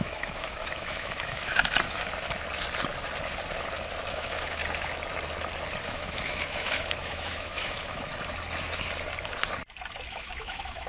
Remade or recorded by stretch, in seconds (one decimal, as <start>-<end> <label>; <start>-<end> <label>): 0.0-1.6 remade; 1.6-4.1 recorded; 4.1-4.6 remade; 4.6-5.8 recorded; 5.8-8.1 remade; 8.1-10.1 recorded; 10.1-10.9 remade